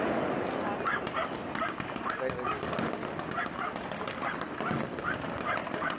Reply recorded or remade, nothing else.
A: recorded